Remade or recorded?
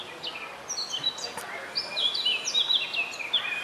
recorded